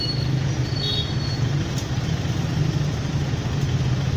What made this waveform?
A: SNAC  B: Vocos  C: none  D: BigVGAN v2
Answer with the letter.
C